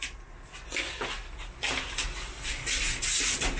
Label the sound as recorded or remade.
recorded